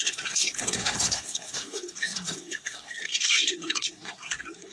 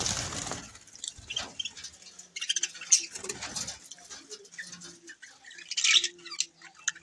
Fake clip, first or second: first